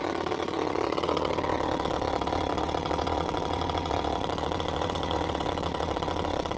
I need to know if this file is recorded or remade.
remade